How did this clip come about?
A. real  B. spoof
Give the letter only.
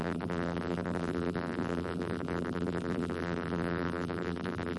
B